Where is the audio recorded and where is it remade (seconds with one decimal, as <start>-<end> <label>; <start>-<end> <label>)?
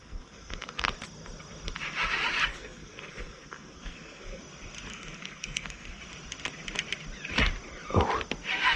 0.0-0.9 remade; 0.9-2.5 recorded; 2.5-4.4 remade; 4.4-4.9 recorded; 4.9-6.0 remade; 6.0-8.8 recorded